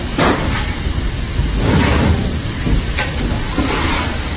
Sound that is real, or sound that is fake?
fake